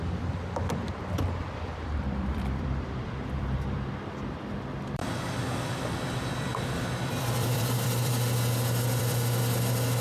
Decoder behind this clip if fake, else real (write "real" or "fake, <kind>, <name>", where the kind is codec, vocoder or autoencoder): fake, vocoder, BigVGAN v2